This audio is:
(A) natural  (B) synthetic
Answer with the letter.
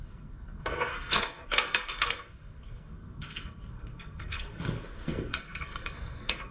B